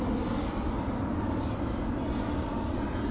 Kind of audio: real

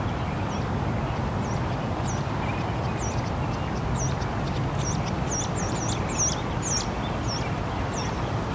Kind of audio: real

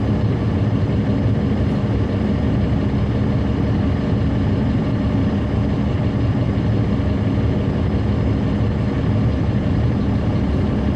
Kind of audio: real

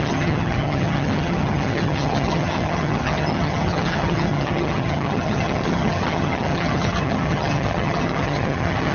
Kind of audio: fake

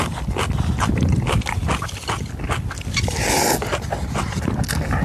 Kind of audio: real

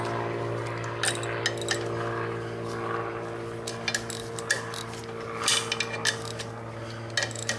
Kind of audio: real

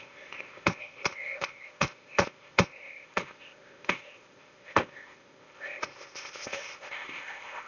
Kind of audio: fake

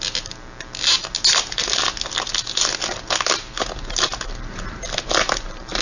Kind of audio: real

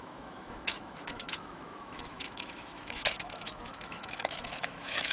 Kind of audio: fake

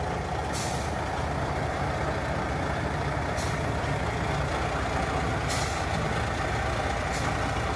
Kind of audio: real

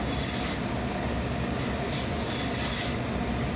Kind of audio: real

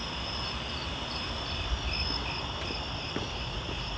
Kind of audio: real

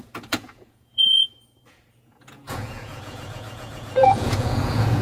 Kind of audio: fake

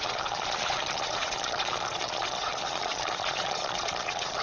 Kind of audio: fake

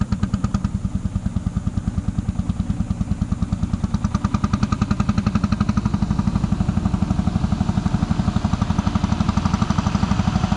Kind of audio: real